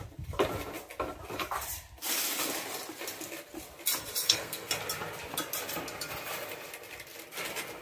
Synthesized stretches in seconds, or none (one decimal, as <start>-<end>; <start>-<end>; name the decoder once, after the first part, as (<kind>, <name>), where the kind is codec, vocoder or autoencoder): 4.2-4.7 (codec, SNAC)